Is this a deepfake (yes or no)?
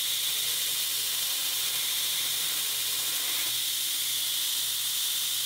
no